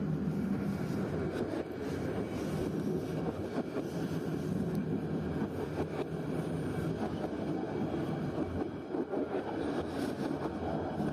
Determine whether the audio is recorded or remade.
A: recorded